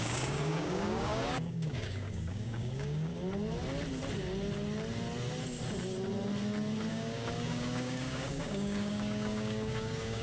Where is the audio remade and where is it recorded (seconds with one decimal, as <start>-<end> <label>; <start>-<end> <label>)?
0.0-3.1 remade; 3.1-6.9 recorded; 6.9-10.2 remade